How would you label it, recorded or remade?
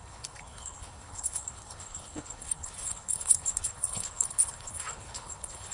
remade